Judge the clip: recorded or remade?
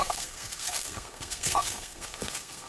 remade